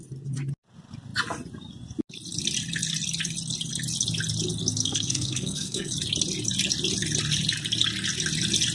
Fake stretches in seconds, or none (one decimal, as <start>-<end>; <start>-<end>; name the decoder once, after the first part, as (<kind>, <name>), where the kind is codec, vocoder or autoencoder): 4.8-5.9 (codec, SNAC)